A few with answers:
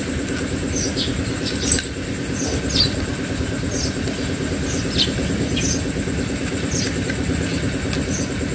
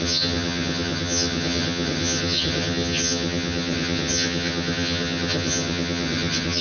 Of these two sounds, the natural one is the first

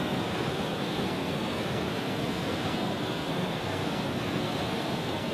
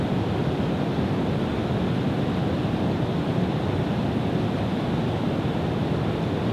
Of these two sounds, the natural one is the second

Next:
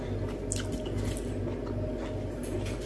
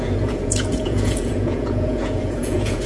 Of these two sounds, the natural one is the first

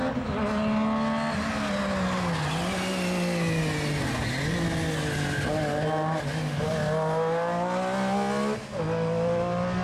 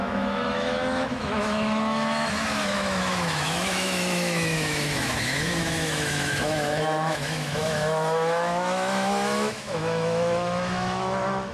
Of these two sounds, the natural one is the first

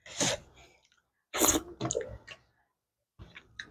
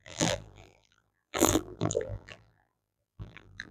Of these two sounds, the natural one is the first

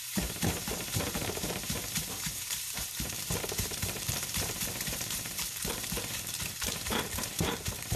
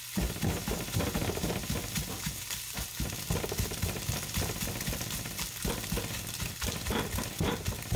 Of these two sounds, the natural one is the second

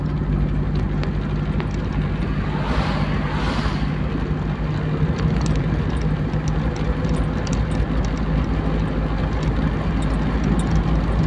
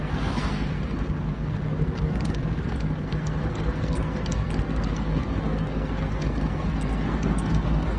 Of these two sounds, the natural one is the first